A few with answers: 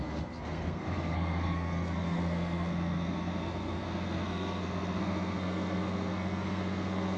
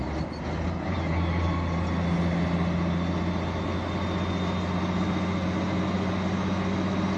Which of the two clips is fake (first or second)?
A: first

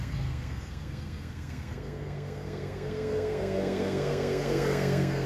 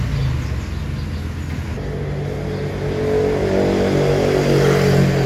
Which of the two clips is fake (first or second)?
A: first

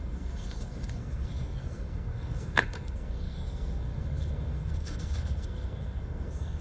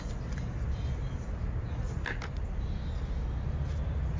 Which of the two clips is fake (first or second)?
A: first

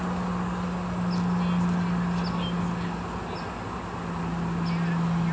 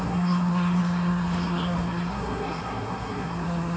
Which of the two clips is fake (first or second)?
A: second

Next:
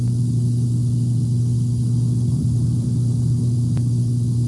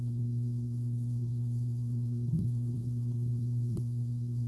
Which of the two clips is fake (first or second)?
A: second